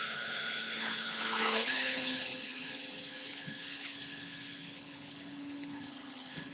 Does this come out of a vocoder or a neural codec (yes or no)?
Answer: yes